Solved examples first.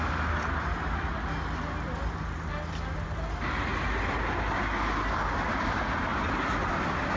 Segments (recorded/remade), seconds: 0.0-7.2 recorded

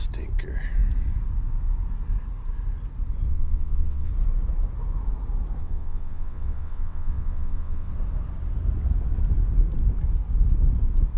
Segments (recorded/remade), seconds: 0.0-3.3 recorded; 3.3-4.1 remade; 4.1-5.6 recorded; 5.6-7.9 remade; 7.9-11.2 recorded